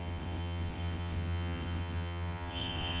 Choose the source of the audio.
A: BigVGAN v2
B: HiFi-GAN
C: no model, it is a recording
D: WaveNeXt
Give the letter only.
D